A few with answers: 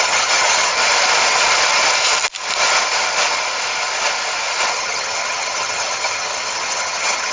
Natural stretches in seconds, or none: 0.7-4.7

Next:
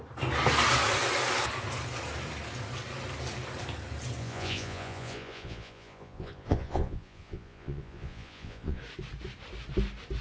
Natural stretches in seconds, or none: 0.0-4.2; 8.8-10.2